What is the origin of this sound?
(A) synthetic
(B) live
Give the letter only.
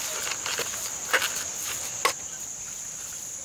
B